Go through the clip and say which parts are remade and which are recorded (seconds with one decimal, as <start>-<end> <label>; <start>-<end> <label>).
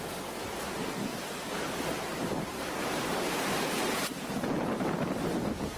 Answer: 0.0-1.1 recorded; 1.1-3.8 remade; 3.8-5.8 recorded